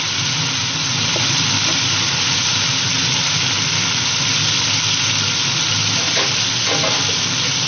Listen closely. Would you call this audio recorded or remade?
recorded